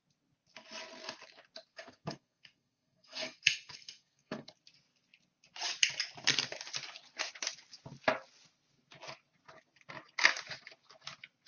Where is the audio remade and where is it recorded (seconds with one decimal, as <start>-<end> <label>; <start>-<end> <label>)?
0.0-1.7 recorded; 1.7-4.5 remade; 4.5-11.5 recorded